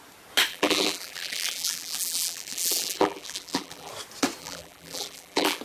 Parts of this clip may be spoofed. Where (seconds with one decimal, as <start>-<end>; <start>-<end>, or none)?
0.5-3.9; 4.4-5.6